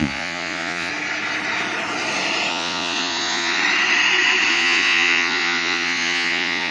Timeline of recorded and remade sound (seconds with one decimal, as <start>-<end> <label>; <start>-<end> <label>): 0.0-0.9 remade; 0.9-2.5 recorded; 2.5-3.6 remade; 3.6-4.5 recorded; 4.5-6.7 remade